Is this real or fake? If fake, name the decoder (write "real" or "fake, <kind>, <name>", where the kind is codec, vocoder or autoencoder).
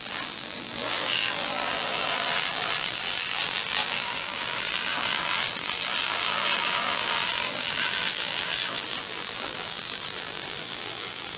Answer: fake, vocoder, BigVGAN v2